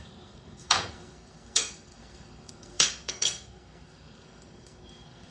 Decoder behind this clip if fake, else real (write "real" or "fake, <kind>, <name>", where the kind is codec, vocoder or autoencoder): fake, codec, SNAC